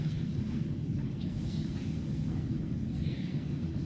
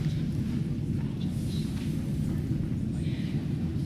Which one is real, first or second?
second